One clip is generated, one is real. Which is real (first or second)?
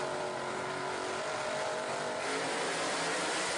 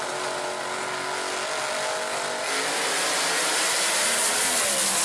second